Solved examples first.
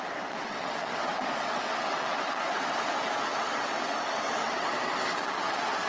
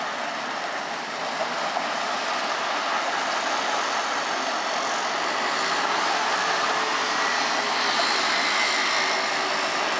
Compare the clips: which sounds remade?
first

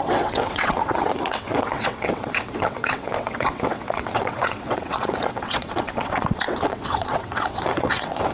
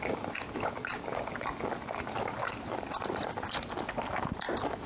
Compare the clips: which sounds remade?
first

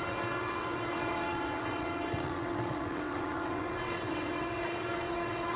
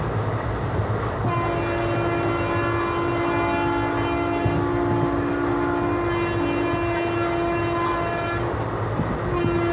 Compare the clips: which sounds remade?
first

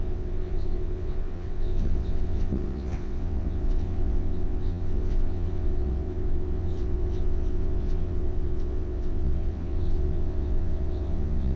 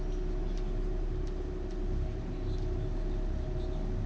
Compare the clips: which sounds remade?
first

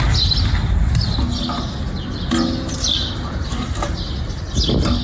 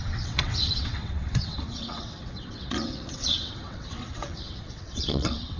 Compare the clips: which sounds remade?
second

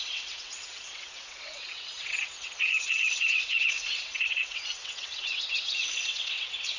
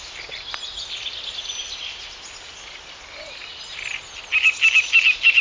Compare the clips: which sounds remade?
first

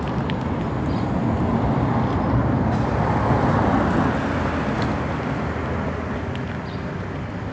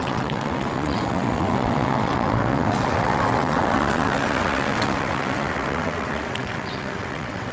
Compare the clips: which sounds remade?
second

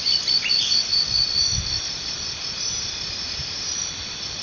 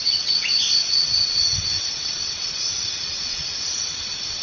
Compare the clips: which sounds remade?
second